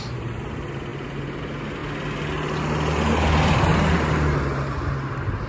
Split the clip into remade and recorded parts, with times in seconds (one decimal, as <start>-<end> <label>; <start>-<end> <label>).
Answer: 0.0-5.5 recorded